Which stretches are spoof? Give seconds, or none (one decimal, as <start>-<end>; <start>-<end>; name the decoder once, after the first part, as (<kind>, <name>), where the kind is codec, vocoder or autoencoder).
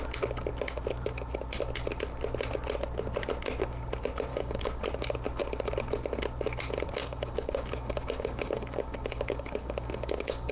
4.3-4.8 (codec, DAC); 7.0-10.5